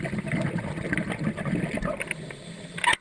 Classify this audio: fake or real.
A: real